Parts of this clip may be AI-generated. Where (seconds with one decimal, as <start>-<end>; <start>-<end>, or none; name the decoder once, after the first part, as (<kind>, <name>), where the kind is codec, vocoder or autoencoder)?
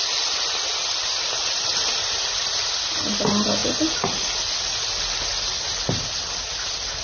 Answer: none